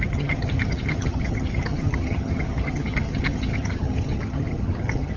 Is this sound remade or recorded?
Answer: remade